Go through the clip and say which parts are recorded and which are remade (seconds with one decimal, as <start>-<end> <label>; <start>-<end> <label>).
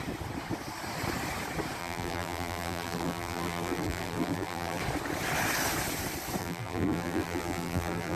0.0-1.8 recorded; 1.8-4.8 remade; 4.8-6.4 recorded; 6.4-8.2 remade